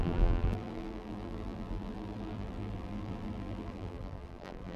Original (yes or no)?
no